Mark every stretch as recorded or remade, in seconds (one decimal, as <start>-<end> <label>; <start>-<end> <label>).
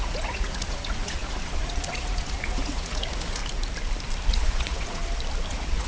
0.0-3.4 remade; 3.4-4.3 recorded; 4.3-5.0 remade; 5.0-5.5 recorded; 5.5-5.9 remade